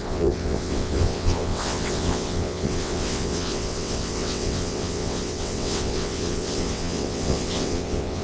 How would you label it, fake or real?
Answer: fake